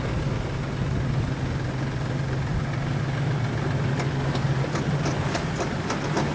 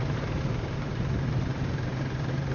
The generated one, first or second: second